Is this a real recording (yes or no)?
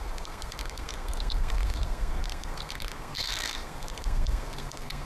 no